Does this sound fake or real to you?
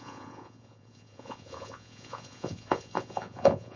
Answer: fake